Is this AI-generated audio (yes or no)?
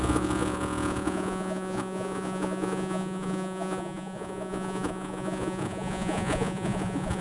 yes